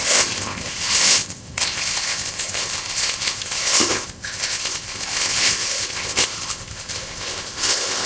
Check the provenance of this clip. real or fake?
fake